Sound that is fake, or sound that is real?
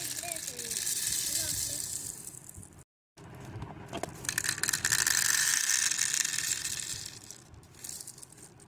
real